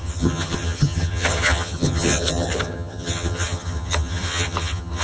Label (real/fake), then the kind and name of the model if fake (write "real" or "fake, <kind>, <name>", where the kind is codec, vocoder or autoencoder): fake, vocoder, HiFi-GAN